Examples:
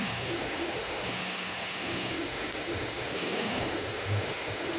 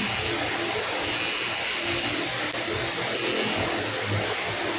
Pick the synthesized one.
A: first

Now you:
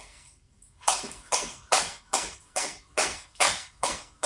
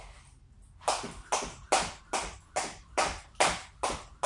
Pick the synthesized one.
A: first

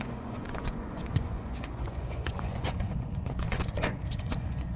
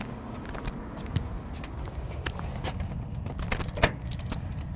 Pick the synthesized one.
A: first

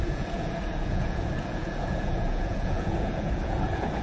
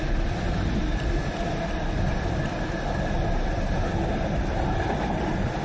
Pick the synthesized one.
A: first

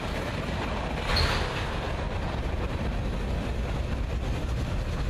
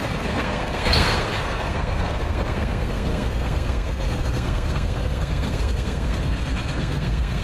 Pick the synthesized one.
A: second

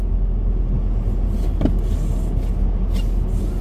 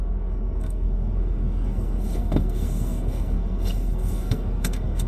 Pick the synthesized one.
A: second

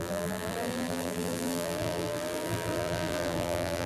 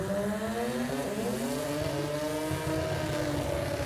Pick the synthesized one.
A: first